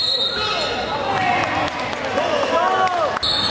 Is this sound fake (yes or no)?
no